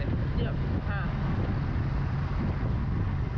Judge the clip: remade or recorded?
recorded